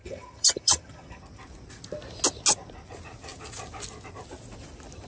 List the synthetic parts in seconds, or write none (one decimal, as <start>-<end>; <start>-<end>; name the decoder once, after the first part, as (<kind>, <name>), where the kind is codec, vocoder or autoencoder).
0.0-1.2 (vocoder, HiFi-GAN)